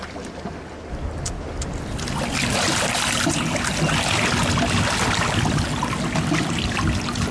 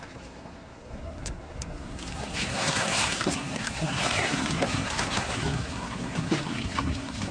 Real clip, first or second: first